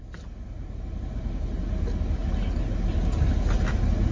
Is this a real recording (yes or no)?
yes